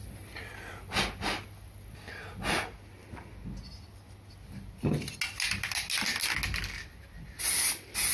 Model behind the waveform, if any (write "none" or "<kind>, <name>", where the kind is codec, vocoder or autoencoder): none